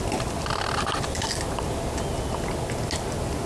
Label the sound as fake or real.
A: real